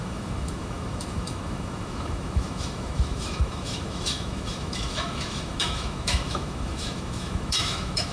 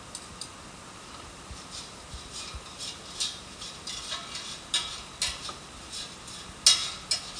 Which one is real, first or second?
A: second